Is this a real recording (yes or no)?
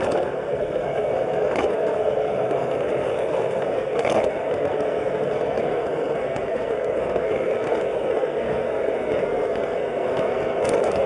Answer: no